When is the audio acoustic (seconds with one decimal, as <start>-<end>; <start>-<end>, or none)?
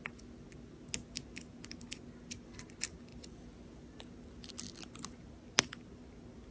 0.0-6.5